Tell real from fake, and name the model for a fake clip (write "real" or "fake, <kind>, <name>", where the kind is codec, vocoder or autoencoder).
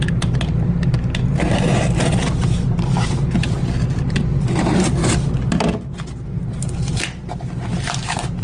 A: real